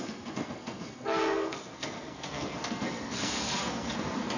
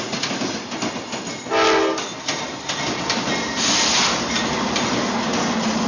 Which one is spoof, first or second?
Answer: first